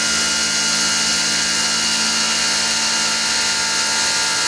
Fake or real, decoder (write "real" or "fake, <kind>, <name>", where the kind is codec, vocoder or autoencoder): real